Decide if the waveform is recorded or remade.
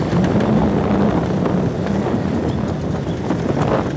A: recorded